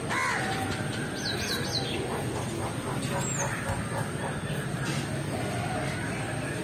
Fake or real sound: real